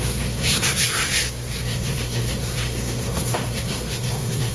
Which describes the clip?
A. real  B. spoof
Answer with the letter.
B